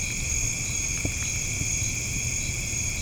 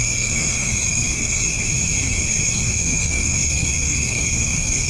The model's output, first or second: second